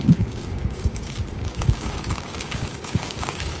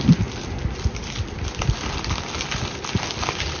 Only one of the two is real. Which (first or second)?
second